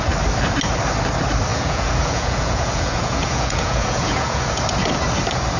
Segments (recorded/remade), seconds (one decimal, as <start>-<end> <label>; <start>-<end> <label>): 0.0-1.5 recorded; 1.5-4.6 remade; 4.6-5.6 recorded